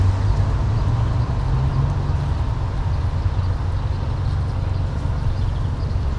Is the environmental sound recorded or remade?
recorded